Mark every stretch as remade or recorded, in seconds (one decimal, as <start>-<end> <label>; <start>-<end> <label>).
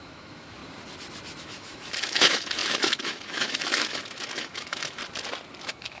0.0-0.6 remade; 0.6-1.4 recorded; 1.4-5.0 remade; 5.0-5.6 recorded; 5.6-6.0 remade